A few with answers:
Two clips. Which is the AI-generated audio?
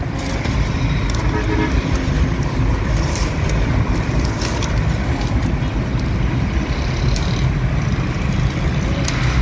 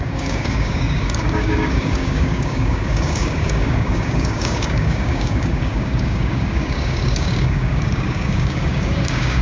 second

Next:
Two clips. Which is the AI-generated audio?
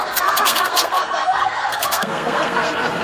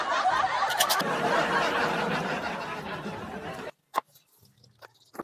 first